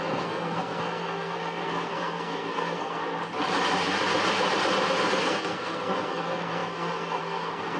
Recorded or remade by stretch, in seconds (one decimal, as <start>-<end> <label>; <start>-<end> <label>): 0.0-3.0 remade; 3.0-5.2 recorded; 5.2-7.8 remade